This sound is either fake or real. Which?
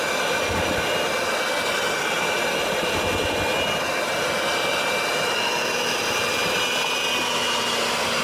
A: real